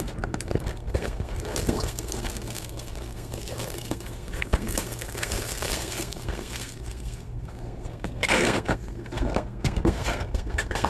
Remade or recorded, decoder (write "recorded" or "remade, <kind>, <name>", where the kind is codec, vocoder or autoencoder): remade, codec, SNAC